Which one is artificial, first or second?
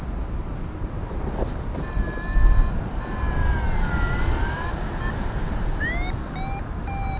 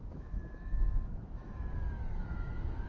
second